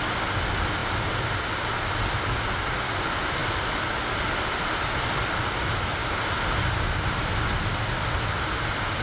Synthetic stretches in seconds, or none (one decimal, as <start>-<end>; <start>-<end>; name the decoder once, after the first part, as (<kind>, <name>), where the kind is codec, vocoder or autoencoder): none